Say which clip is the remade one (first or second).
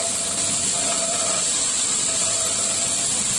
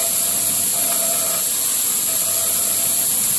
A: first